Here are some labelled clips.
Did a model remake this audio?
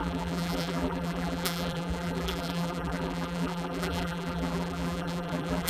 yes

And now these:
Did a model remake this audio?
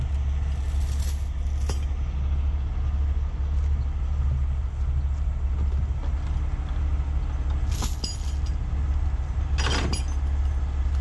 no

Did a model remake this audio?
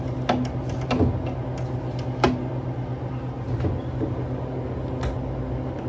no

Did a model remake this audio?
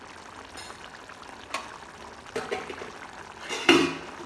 no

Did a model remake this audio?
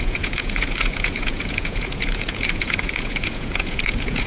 yes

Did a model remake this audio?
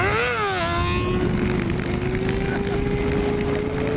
no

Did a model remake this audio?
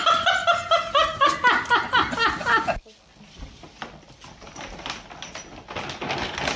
no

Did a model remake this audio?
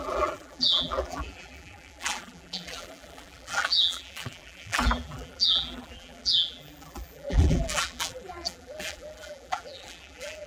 yes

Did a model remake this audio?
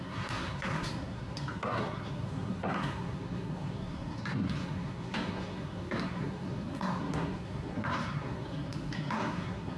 yes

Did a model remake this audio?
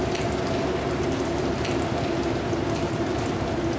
no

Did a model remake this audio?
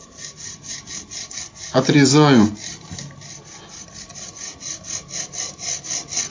no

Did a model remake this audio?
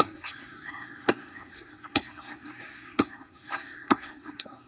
yes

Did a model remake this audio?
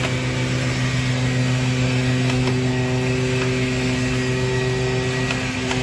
no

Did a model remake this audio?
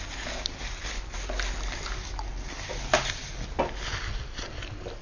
no